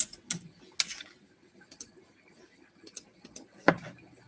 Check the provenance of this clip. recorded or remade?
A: recorded